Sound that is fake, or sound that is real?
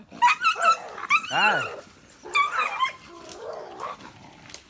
real